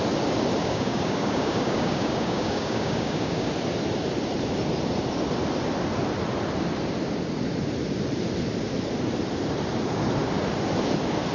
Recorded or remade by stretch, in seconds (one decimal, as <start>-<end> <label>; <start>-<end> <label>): 0.0-0.6 recorded; 0.6-3.5 remade; 3.5-11.3 recorded